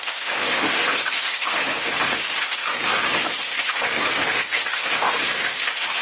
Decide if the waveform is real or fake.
fake